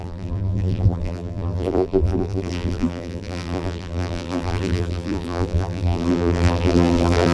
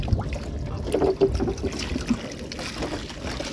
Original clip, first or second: second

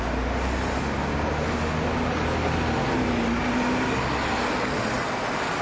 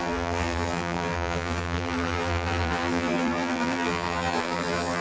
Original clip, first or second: first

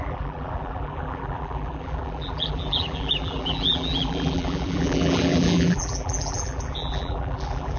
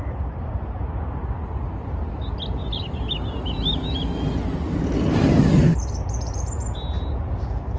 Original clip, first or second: second